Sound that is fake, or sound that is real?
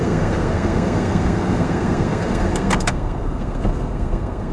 fake